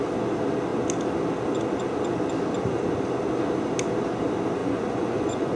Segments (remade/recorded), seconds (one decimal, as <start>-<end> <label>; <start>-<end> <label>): 0.0-4.6 recorded; 4.6-5.6 remade